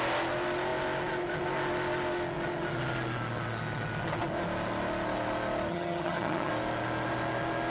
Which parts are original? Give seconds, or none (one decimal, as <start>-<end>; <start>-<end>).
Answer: 0.0-5.7; 6.5-7.7